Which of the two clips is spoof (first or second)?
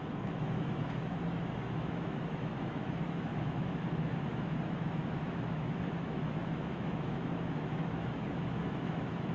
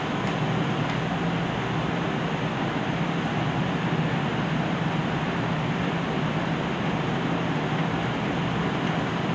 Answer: first